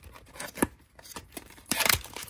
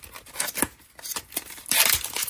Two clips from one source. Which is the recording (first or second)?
second